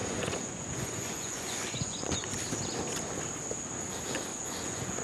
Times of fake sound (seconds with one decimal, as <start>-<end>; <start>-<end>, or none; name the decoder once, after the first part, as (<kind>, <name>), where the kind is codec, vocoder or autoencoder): 0.0-2.3 (vocoder, Vocos); 4.3-5.0